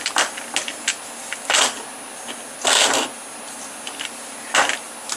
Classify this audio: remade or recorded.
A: recorded